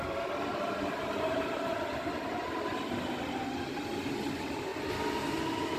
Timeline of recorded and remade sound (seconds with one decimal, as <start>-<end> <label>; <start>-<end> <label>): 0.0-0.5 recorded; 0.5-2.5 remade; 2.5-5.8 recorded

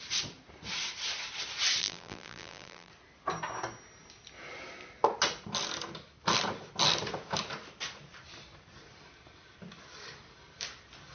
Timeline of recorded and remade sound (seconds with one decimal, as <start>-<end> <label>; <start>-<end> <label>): 0.0-1.8 recorded; 1.8-2.9 remade; 2.9-11.1 recorded

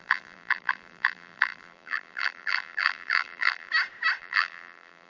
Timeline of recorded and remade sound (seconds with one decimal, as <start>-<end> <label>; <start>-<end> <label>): 0.0-3.7 remade; 3.7-4.2 recorded; 4.2-5.1 remade

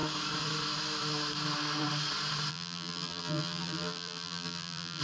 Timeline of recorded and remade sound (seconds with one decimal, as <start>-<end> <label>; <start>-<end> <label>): 0.0-2.5 recorded; 2.5-5.0 remade

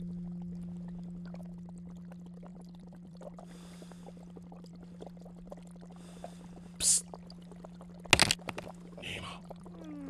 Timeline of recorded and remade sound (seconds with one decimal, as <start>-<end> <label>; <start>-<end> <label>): 0.0-2.5 recorded; 2.5-3.4 remade; 3.4-9.0 recorded; 9.0-9.7 remade; 9.7-10.1 recorded

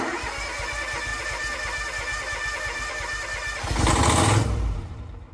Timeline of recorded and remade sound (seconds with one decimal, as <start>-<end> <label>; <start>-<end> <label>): 0.0-1.1 remade; 1.1-4.2 recorded; 4.2-5.3 remade

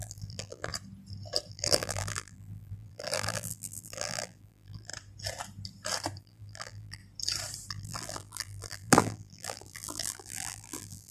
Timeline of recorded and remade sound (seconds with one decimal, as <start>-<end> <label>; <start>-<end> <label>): 0.0-0.7 remade; 0.7-1.5 recorded; 1.5-4.9 remade; 4.9-6.2 recorded; 6.2-7.0 remade; 7.0-7.7 recorded; 7.7-11.1 remade